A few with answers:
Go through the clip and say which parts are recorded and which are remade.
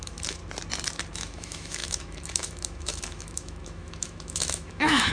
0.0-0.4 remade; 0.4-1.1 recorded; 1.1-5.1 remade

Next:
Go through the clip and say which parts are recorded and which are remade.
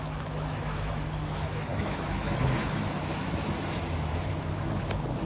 0.0-5.2 remade